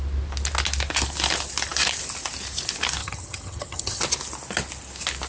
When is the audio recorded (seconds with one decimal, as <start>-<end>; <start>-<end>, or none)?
0.0-3.0; 4.0-5.3